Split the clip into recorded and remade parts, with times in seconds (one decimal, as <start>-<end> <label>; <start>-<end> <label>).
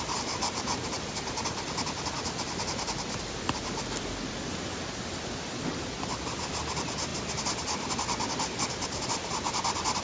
0.0-10.0 recorded